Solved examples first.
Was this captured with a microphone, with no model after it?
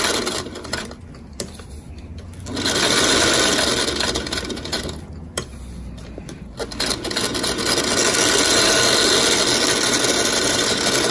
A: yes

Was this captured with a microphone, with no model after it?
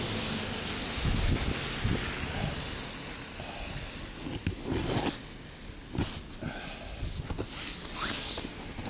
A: yes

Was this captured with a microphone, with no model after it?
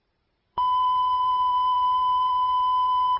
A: no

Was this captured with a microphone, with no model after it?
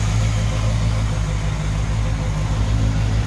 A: yes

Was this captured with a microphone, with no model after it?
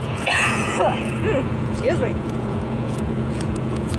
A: no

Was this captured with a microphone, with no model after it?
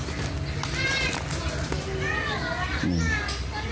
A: yes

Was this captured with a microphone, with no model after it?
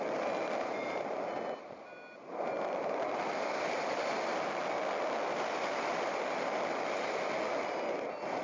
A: yes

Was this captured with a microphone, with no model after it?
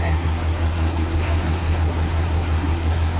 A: no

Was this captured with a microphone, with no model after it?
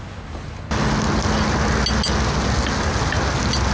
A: yes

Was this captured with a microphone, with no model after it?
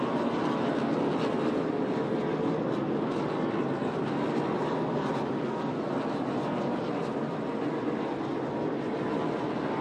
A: yes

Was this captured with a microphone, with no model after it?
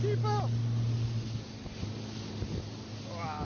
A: yes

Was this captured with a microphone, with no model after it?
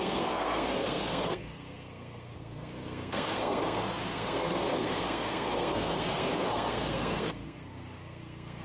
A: no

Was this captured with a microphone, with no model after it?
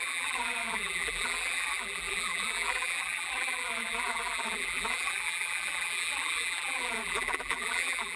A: no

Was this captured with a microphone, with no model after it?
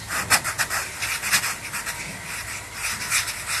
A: yes